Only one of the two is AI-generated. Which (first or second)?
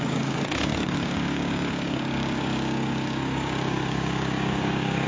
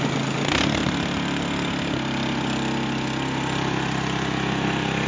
first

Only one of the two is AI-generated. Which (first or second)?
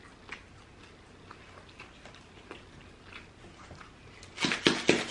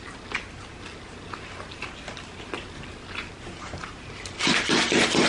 second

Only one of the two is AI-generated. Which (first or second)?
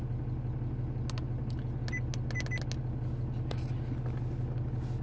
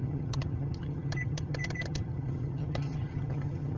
second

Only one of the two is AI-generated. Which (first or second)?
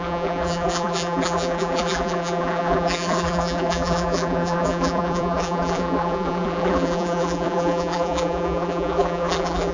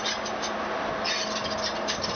first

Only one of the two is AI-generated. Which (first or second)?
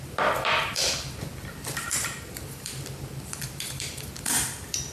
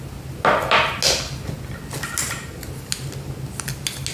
first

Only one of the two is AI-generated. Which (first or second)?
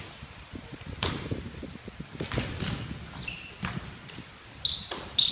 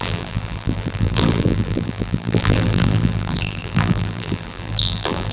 second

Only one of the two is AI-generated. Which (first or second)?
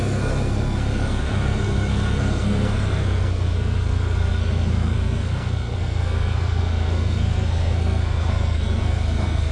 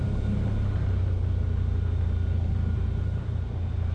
first